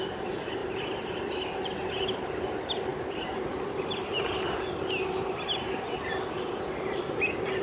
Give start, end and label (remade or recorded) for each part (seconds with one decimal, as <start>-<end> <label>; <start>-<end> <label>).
0.0-7.6 recorded